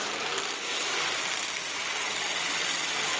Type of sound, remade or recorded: recorded